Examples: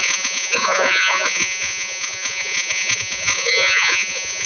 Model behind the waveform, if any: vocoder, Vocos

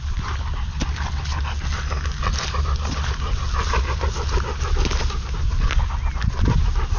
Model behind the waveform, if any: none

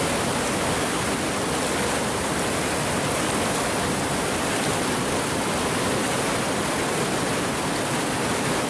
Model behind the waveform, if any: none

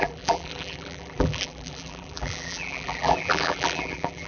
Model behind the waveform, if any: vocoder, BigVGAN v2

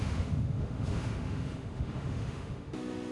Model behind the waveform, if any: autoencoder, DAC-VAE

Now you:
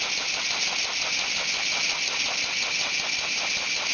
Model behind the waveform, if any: none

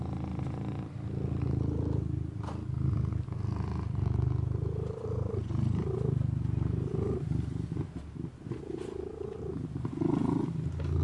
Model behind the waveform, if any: none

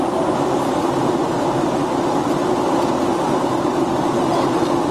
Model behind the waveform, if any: none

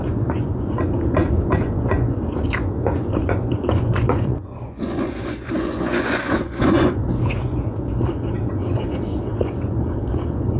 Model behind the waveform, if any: vocoder, Vocos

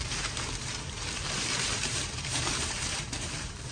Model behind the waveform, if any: vocoder, BigVGAN v2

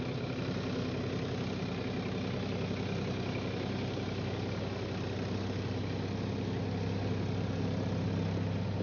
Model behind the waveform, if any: none